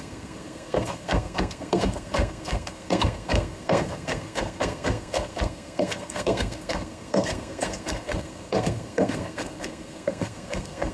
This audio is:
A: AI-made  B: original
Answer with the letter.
A